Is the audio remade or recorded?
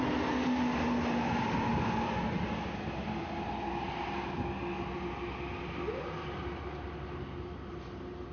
recorded